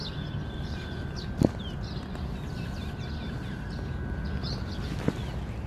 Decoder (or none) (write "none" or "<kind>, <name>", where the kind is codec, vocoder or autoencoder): none